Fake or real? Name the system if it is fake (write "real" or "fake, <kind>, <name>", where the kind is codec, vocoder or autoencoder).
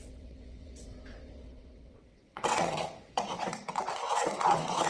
fake, vocoder, WaveNeXt